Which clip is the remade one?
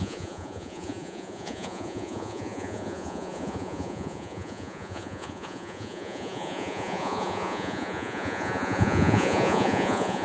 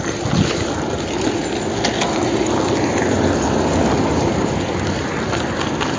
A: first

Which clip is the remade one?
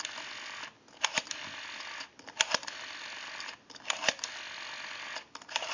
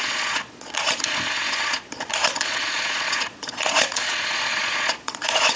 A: second